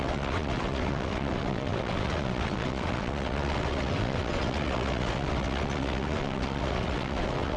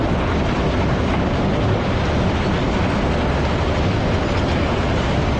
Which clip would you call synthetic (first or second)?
first